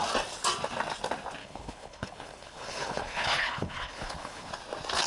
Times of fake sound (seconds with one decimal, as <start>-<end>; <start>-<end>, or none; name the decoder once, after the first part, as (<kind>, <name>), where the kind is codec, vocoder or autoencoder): 1.4-4.5 (codec, HILCodec)